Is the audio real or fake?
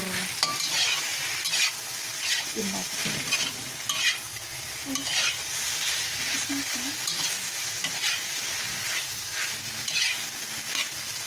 real